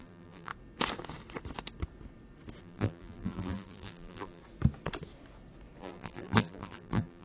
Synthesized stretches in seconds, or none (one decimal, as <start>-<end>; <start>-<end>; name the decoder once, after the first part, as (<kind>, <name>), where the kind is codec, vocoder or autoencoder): 0.0-0.5 (vocoder, BigVGAN v2); 2.6-4.4; 5.8-7.2